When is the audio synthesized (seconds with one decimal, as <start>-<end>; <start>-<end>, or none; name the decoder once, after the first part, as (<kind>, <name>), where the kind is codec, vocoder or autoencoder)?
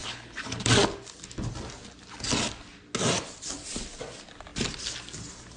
0.0-0.6 (codec, HILCodec)